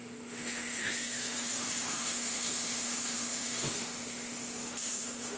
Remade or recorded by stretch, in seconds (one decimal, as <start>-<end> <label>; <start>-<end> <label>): 0.0-5.4 remade